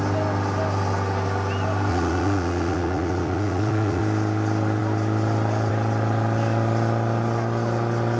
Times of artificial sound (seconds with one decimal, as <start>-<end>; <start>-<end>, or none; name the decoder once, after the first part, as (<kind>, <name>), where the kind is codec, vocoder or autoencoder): 1.9-4.0 (vocoder, Vocos)